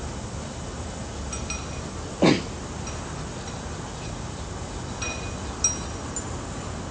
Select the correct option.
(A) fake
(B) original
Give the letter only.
B